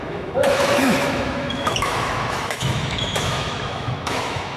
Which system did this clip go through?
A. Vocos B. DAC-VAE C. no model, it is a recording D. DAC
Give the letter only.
B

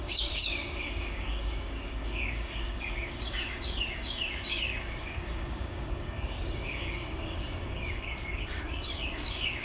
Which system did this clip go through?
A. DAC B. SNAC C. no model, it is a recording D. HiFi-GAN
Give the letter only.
A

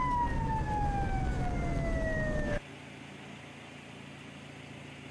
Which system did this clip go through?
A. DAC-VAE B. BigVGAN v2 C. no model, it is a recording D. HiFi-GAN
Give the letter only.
C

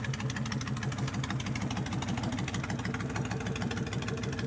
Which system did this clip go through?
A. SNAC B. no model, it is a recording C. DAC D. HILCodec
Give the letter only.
B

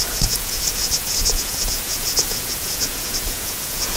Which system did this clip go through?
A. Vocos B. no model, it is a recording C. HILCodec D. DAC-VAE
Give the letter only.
A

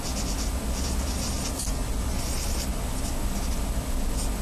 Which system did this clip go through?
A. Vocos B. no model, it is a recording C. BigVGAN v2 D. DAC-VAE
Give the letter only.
B